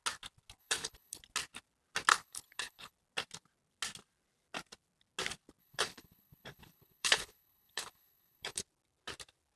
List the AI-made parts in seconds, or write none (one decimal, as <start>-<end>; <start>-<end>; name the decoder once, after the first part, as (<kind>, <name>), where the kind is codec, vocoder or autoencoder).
0.6-1.2 (codec, HILCodec); 2.1-2.9; 5.6-8.6